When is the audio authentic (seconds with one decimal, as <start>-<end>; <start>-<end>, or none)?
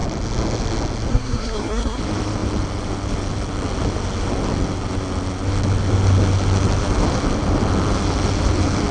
0.0-1.1; 2.0-8.9